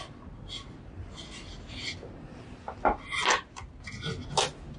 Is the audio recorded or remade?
recorded